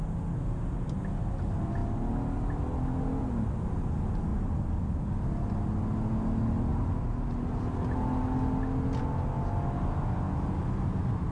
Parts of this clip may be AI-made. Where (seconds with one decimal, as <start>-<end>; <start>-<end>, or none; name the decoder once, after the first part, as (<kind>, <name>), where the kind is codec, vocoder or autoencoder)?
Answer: none